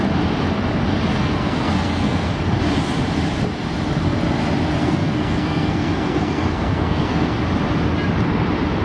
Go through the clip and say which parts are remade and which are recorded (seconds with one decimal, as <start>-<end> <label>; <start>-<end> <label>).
0.0-1.1 recorded; 1.1-2.3 remade; 2.3-4.8 recorded; 4.8-7.4 remade; 7.4-8.8 recorded